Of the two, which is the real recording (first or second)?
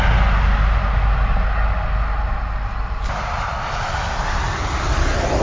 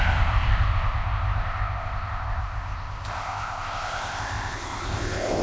first